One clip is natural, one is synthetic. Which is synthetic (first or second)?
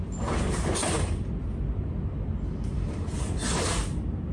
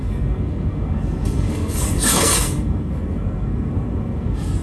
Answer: second